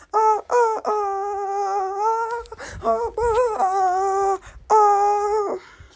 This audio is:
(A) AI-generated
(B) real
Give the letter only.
B